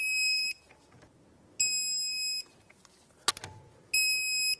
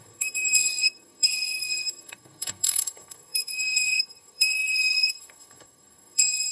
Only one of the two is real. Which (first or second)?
first